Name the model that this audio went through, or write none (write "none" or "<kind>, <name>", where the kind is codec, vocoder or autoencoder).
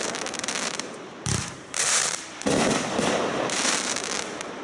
vocoder, BigVGAN v2